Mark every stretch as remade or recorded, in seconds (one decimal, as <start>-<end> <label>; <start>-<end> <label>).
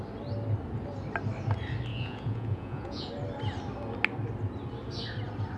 0.0-1.9 recorded; 1.9-3.1 remade; 3.1-5.6 recorded